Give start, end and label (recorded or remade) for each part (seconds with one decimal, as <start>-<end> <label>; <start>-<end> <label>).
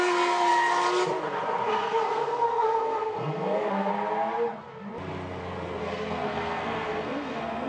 0.0-0.5 remade; 0.5-1.7 recorded; 1.7-3.9 remade; 3.9-5.8 recorded; 5.8-7.7 remade